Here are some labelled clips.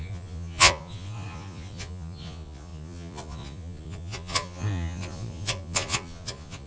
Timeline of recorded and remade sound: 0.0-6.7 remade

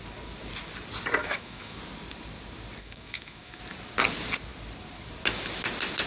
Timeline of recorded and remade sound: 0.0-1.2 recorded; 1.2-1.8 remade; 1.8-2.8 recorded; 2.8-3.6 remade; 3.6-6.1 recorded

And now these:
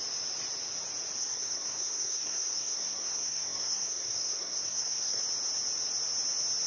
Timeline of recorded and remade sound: 0.0-1.2 recorded; 1.2-5.2 remade; 5.2-6.7 recorded

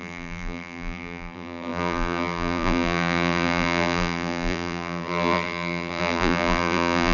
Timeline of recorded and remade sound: 0.0-7.1 remade